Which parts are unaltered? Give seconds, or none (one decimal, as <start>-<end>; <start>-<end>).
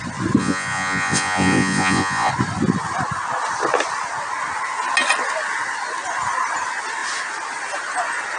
0.0-0.4; 2.3-8.4